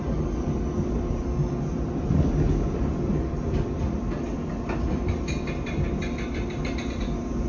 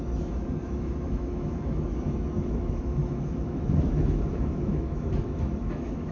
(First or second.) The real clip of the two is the first